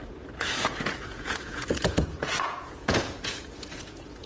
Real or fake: fake